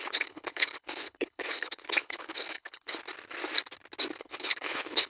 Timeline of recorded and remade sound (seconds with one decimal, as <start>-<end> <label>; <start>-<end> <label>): 0.0-3.0 remade; 3.0-4.2 recorded; 4.2-5.1 remade